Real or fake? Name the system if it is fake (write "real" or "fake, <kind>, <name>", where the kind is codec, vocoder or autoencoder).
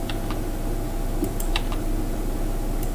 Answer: real